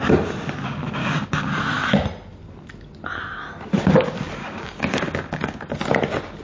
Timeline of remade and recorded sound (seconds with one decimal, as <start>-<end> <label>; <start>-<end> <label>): 0.0-1.0 recorded; 1.0-1.6 remade; 1.6-4.4 recorded; 4.4-5.8 remade; 5.8-6.4 recorded